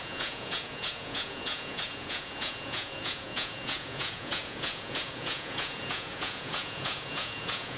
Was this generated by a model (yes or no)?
yes